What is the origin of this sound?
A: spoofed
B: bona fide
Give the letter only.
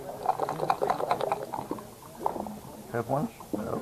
B